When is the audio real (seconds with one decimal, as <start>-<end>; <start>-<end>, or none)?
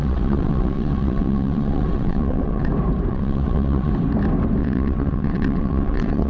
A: 2.7-3.1; 3.9-4.6